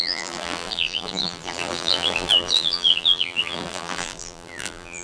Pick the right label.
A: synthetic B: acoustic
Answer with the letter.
A